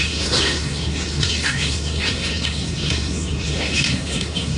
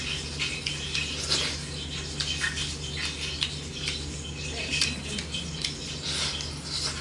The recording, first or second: second